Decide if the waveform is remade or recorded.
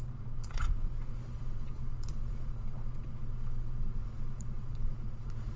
remade